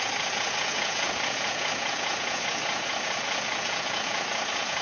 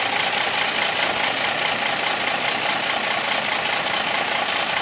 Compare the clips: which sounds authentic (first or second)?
second